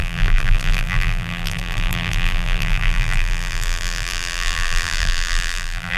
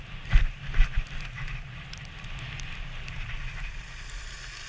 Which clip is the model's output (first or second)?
first